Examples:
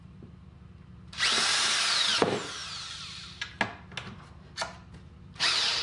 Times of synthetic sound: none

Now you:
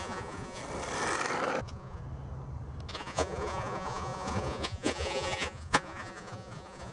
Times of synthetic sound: 0.0-0.6 (vocoder, Vocos); 1.6-2.0; 2.9-6.9